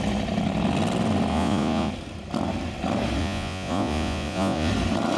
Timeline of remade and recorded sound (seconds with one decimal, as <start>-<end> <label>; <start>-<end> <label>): 0.0-1.3 recorded; 1.3-1.9 remade; 1.9-3.2 recorded; 3.2-4.7 remade; 4.7-5.2 recorded